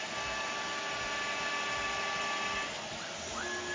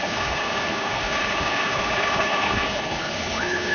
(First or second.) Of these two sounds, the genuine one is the first